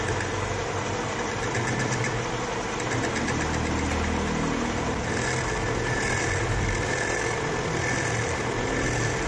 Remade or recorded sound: recorded